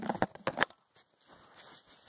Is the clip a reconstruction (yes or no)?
no